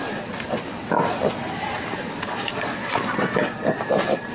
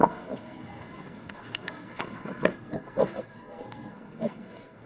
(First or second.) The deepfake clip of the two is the second